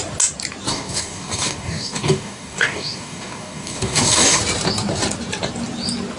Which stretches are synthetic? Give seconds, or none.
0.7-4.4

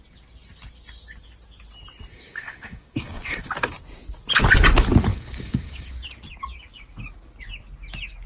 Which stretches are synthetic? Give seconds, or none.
2.1-3.4; 5.1-5.9

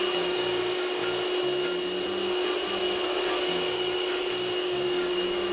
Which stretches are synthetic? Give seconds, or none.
0.0-1.0; 2.8-5.5

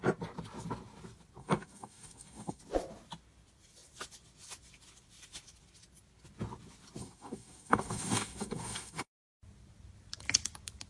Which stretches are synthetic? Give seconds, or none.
1.4-2.6; 7.0-9.4

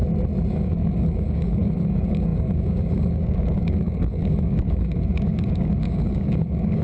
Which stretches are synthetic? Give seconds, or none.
0.5-6.8

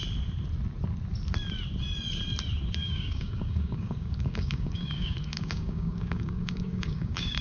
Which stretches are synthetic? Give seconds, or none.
2.8-7.4

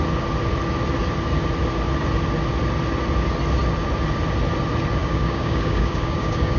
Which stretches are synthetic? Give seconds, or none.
5.0-6.6

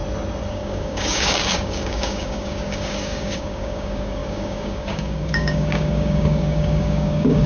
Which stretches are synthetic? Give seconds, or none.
0.5-7.5